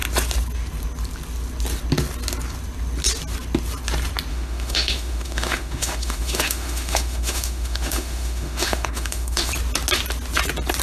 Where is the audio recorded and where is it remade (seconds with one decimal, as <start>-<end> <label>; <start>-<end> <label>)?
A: 0.0-4.3 recorded; 4.3-9.5 remade; 9.5-10.8 recorded